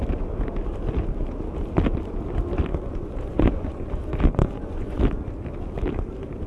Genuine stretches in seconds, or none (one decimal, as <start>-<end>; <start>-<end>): 0.0-2.7; 3.9-4.4; 5.0-6.5